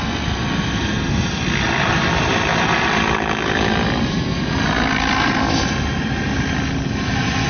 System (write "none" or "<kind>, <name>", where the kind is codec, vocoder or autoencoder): none